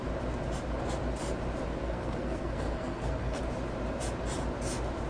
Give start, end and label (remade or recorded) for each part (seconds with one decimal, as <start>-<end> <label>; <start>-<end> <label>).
0.0-1.8 recorded; 1.8-3.4 remade; 3.4-5.1 recorded